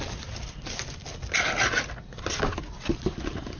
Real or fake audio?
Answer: real